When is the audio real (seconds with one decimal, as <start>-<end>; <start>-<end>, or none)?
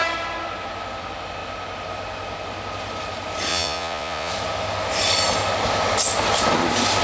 0.0-3.5; 4.3-7.0